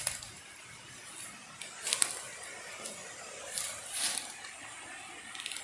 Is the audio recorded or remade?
recorded